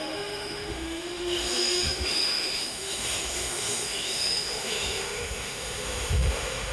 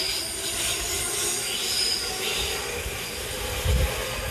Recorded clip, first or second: second